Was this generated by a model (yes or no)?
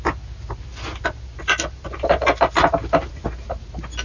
no